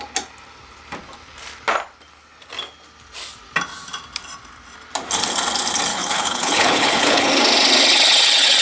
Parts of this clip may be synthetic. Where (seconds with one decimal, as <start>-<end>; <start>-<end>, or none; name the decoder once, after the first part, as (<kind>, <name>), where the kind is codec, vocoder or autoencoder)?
5.9-7.3 (codec, HILCodec)